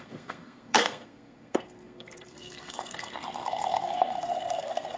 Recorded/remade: remade